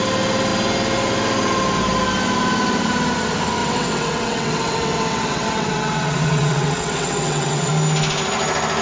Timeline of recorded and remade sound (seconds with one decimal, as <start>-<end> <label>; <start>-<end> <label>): 0.0-3.6 recorded; 3.6-7.7 remade; 7.7-8.8 recorded